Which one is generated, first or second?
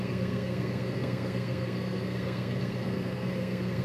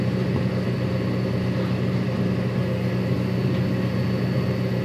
first